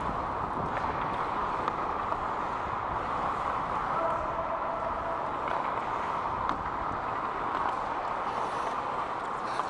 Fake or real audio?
real